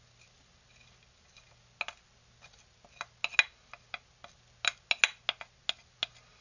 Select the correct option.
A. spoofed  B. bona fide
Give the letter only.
B